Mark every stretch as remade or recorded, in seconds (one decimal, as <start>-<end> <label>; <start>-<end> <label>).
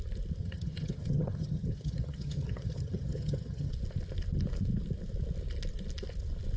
0.0-0.4 recorded; 0.4-3.7 remade; 3.7-6.6 recorded